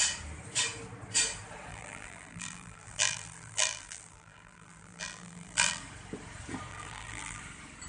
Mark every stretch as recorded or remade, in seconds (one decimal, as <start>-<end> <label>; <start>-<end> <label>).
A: 0.0-1.7 recorded; 1.7-5.8 remade; 5.8-6.7 recorded; 6.7-7.4 remade; 7.4-7.9 recorded